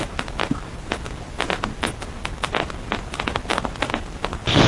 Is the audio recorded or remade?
recorded